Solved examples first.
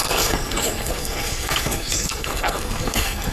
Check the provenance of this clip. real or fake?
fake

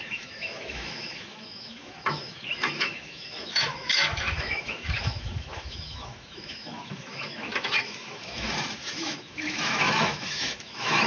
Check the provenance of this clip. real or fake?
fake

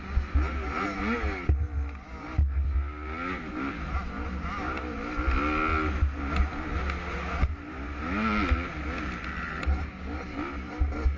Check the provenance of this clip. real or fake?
real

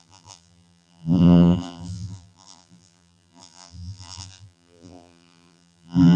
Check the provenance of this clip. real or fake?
fake